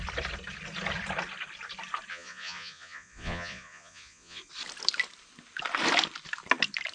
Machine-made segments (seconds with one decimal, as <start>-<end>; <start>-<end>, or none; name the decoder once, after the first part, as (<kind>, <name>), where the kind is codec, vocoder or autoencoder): 2.1-4.4 (vocoder, Vocos)